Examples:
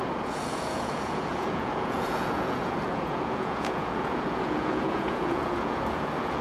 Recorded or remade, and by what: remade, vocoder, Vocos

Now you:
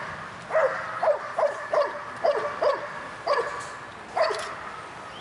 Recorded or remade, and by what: recorded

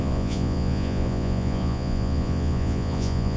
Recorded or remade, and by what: remade, vocoder, Vocos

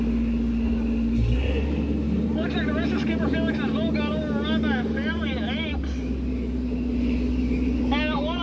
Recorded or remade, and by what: recorded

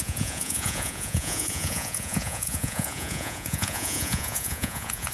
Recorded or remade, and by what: remade, vocoder, Vocos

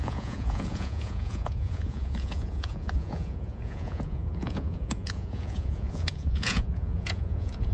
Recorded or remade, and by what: remade, vocoder, Vocos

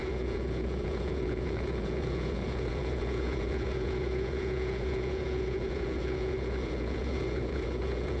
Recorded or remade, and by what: remade, vocoder, Vocos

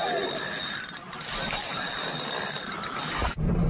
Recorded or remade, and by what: recorded